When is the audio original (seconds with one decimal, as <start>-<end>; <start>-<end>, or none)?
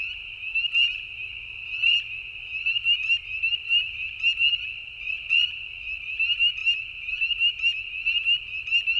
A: 0.0-9.0